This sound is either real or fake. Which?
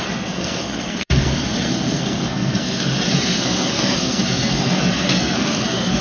fake